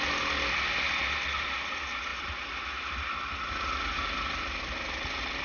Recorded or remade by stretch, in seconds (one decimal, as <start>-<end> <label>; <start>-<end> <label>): 0.0-5.4 recorded